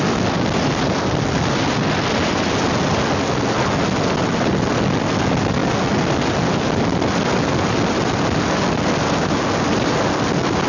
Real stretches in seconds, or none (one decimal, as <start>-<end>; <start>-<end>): 0.0-10.7